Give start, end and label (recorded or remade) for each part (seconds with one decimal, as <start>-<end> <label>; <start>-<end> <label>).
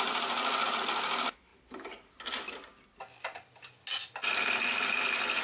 0.0-1.5 recorded; 1.5-2.1 remade; 2.1-5.4 recorded